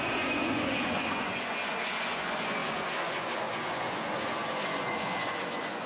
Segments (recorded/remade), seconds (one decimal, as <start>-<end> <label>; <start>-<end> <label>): 0.0-5.9 remade